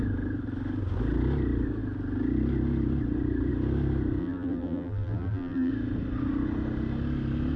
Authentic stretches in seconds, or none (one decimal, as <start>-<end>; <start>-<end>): 0.0-4.2; 5.7-7.6